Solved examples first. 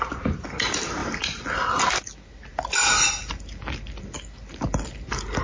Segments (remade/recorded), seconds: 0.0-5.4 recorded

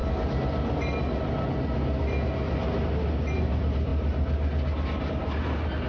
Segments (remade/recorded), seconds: 0.0-3.4 recorded; 3.4-3.9 remade; 3.9-5.1 recorded; 5.1-5.9 remade

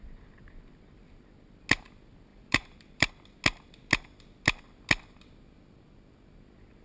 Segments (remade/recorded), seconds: 0.0-2.3 recorded; 2.3-3.1 remade; 3.1-6.8 recorded

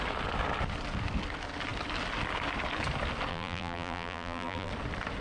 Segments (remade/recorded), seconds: 0.0-3.3 recorded; 3.3-4.7 remade; 4.7-5.2 recorded

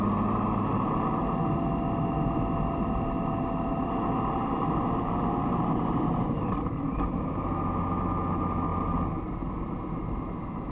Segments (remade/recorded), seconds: 0.0-3.7 recorded; 3.7-7.4 remade; 7.4-8.7 recorded; 8.7-9.3 remade; 9.3-10.7 recorded

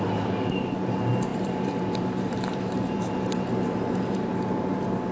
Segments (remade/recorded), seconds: 0.0-1.3 recorded; 1.3-4.4 remade; 4.4-5.1 recorded

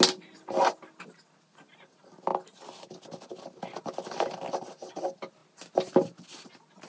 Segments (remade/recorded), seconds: 0.0-6.9 recorded